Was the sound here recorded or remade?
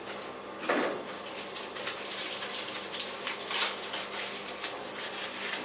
recorded